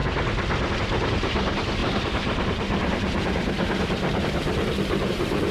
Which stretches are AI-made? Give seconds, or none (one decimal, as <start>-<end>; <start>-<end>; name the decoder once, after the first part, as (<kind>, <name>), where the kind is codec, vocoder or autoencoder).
0.8-5.5 (vocoder, BigVGAN v2)